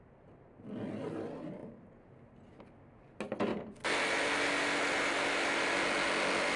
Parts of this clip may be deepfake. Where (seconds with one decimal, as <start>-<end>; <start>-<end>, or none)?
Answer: none

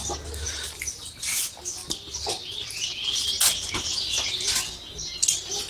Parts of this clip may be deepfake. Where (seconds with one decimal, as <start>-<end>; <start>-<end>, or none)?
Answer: none

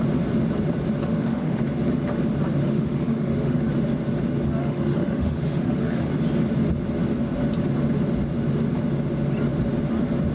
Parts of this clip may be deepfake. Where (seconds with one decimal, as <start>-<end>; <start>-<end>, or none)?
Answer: 1.0-1.6; 2.6-3.7; 4.6-6.1

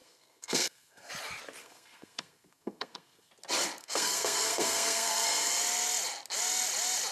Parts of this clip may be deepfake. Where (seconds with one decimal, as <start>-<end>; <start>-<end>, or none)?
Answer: 0.0-1.1; 1.6-3.3; 3.8-5.6

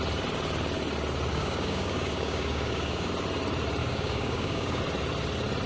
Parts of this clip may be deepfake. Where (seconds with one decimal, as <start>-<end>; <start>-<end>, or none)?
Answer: 1.3-3.1; 3.8-4.8

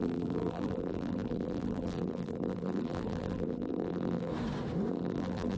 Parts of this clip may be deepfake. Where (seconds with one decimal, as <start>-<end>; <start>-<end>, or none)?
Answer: 0.0-4.3; 4.9-5.6

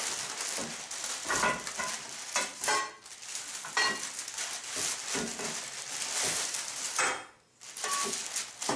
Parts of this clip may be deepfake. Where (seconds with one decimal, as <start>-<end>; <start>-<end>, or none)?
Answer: none